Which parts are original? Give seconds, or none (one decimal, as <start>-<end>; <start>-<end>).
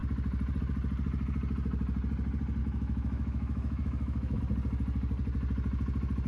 0.0-2.6; 4.4-6.3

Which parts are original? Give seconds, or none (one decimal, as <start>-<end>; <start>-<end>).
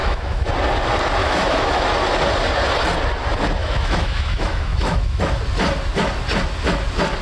0.5-1.2; 1.8-3.6; 5.2-7.2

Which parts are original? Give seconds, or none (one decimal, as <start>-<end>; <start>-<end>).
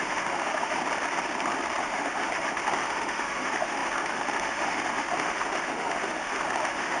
0.8-1.8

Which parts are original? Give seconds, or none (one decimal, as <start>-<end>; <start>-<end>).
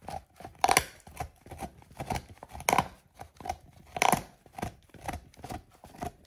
0.0-6.3